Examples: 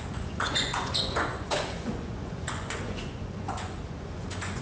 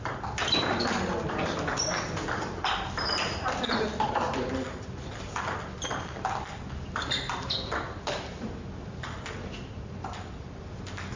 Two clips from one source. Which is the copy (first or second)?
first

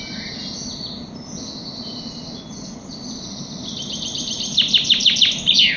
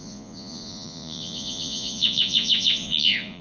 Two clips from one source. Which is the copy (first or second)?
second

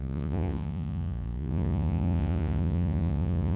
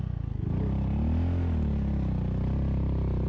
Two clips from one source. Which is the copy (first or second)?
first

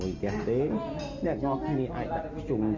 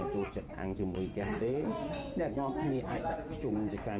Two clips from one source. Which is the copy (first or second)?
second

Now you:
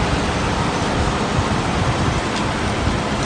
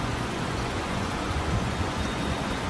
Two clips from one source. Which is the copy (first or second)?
second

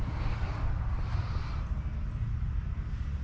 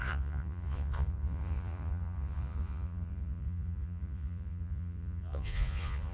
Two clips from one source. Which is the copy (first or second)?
second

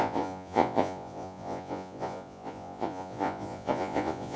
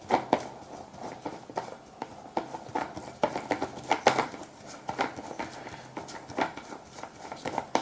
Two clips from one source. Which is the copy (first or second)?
first